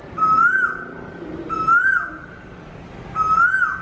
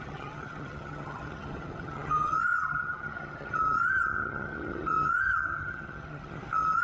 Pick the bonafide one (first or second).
first